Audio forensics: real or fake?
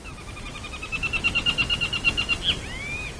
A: real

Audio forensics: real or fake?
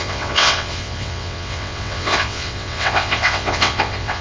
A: fake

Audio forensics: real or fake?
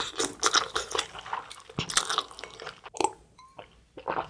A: real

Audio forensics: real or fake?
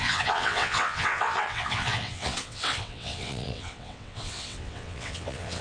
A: fake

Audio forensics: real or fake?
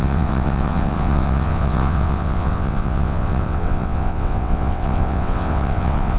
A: fake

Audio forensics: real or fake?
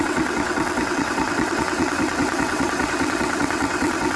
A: fake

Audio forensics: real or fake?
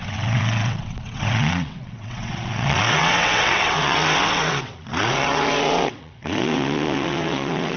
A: fake